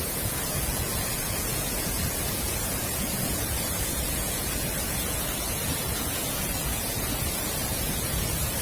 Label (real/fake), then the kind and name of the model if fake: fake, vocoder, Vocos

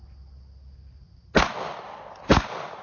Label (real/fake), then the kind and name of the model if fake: real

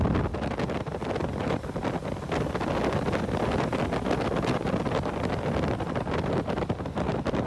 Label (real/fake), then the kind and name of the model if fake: real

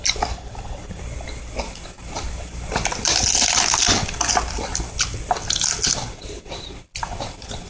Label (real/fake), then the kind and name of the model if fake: real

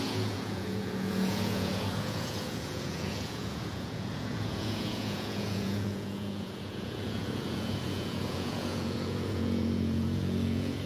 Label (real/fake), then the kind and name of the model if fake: fake, vocoder, Vocos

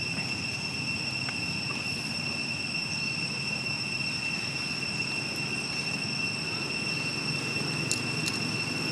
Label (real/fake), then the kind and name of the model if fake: real